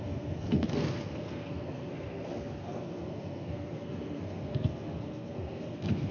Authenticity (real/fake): fake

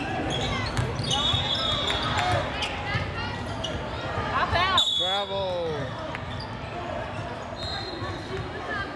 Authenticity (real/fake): real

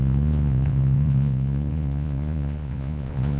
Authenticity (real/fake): fake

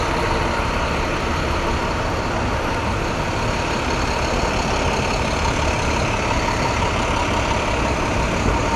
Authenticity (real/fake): real